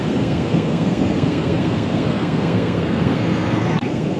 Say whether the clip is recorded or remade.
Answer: remade